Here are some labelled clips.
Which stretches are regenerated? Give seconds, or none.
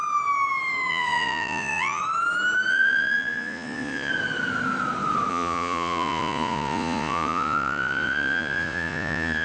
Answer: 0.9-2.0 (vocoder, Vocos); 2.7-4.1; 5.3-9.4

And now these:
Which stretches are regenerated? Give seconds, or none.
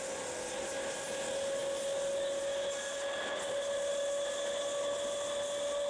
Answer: none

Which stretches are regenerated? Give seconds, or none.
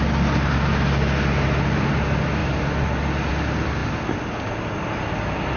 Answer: none